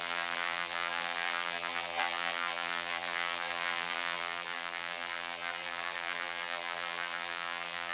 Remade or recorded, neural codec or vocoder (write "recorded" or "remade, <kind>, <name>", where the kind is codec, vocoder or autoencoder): remade, vocoder, BigVGAN v2